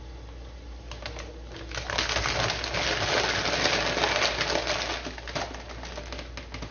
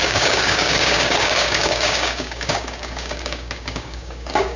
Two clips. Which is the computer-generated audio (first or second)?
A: second